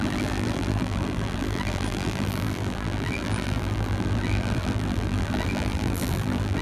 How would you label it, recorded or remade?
remade